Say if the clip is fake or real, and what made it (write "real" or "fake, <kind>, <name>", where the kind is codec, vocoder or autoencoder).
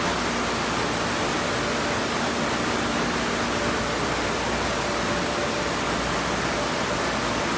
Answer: real